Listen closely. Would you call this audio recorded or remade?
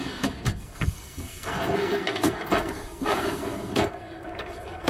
remade